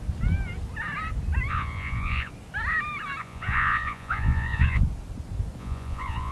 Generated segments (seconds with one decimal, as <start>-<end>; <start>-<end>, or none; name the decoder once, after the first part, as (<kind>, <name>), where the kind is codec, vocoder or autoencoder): 1.5-2.3 (vocoder, Vocos); 3.2-4.8; 5.6-6.3